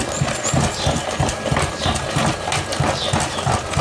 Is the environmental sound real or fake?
real